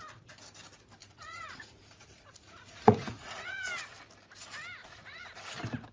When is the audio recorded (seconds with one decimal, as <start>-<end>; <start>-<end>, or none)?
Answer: 0.0-1.0; 3.7-4.8; 5.4-5.9